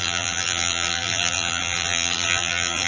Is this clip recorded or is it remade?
remade